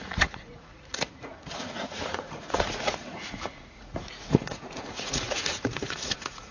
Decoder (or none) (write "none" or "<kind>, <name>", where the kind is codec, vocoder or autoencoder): vocoder, Vocos